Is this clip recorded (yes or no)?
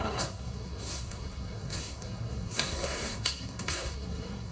no